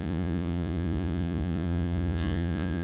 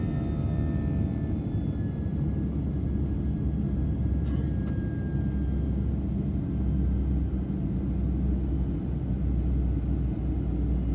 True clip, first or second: second